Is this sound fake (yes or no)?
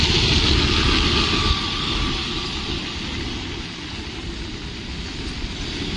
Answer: no